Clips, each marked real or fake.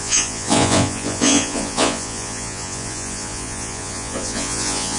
fake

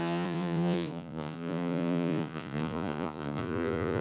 fake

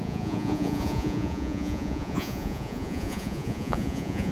fake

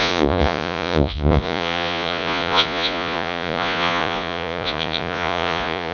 fake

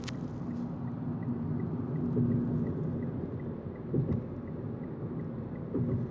real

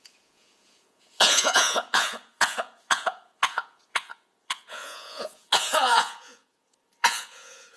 fake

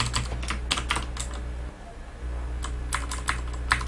real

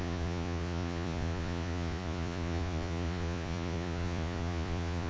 fake